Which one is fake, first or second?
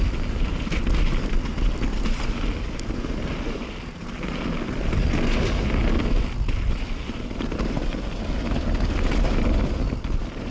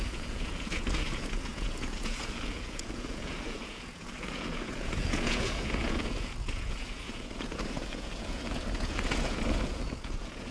second